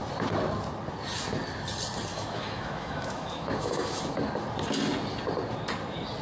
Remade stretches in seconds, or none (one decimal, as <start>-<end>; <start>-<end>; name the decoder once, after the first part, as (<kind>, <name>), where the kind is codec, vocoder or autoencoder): 2.1-4.0 (autoencoder, DAC-VAE)